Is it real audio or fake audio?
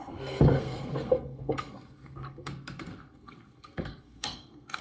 fake